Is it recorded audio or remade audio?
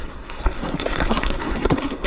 remade